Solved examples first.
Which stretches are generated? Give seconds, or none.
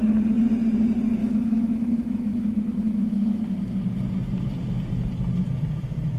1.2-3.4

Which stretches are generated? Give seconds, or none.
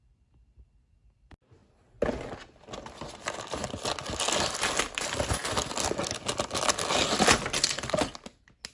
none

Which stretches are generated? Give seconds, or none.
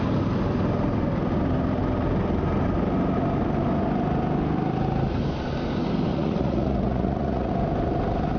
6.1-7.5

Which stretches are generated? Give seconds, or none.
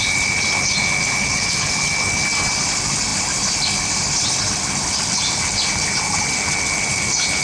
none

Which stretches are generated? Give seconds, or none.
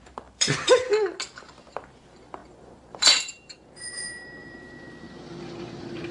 0.0-0.9; 1.7-6.1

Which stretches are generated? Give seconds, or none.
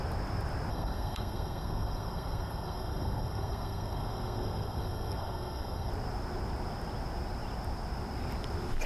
0.7-5.9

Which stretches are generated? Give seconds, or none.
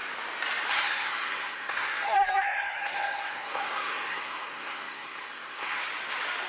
0.7-5.8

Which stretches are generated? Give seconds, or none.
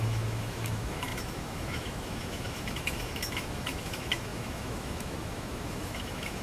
0.0-6.4